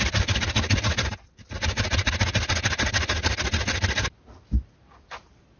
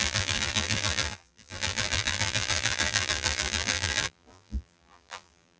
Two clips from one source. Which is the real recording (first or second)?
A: first